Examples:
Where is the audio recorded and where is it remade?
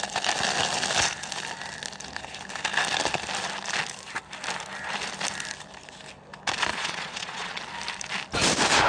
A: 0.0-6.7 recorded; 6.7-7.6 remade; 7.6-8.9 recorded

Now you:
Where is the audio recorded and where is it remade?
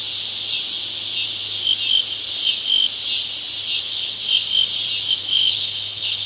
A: 0.0-3.8 recorded; 3.8-4.2 remade; 4.2-5.2 recorded; 5.2-6.3 remade